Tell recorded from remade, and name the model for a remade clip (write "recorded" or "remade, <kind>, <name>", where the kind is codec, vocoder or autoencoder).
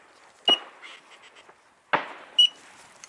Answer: recorded